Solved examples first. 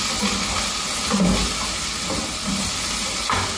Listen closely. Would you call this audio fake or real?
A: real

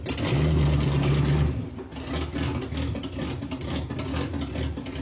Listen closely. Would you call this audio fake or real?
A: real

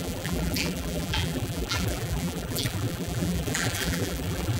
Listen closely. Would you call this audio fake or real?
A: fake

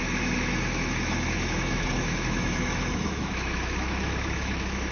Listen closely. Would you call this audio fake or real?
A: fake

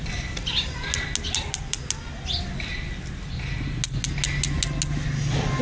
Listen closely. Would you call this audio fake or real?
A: real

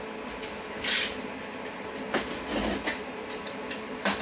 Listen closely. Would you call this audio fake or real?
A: real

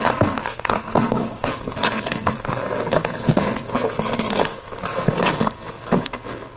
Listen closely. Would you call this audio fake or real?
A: fake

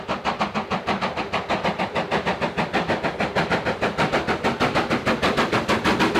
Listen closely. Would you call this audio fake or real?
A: fake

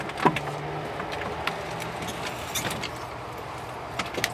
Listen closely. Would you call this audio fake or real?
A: real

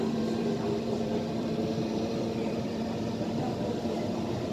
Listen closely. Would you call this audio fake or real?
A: fake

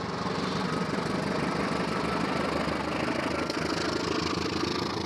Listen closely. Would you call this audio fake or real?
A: real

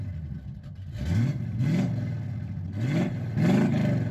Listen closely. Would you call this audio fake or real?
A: real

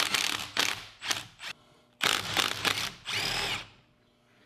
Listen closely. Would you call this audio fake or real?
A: real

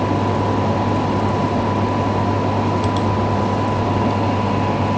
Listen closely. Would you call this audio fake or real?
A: real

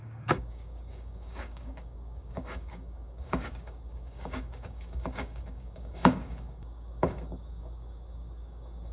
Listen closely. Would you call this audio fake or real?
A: fake